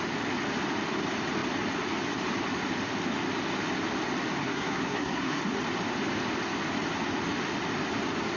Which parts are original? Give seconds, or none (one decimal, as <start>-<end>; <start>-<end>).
0.0-4.4; 5.4-8.4